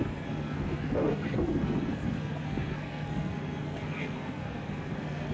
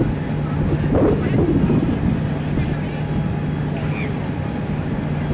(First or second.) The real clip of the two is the second